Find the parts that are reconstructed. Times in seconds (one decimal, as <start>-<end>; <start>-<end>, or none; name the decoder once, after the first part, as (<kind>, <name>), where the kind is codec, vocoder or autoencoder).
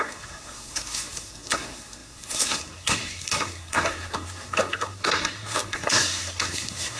0.0-7.0 (codec, SNAC)